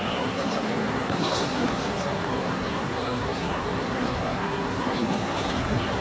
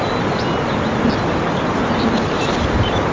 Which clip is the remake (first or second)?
first